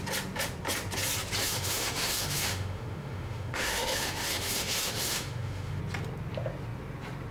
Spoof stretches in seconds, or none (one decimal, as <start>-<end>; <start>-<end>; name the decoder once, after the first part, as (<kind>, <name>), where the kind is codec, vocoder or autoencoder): 1.4-5.8 (autoencoder, DAC-VAE)